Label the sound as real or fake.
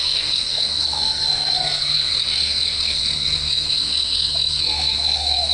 fake